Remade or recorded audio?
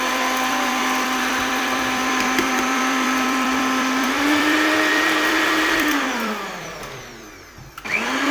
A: remade